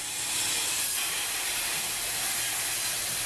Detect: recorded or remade remade